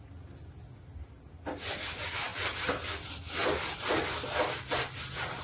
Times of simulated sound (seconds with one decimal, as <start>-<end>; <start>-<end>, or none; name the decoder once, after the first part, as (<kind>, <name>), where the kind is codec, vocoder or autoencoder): none